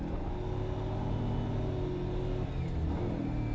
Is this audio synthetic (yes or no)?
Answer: no